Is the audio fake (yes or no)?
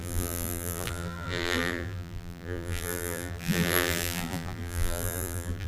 yes